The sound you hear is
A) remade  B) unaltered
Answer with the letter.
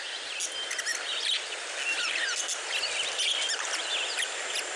B